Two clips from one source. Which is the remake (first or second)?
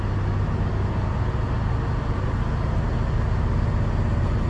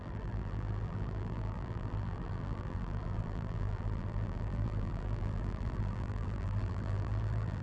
second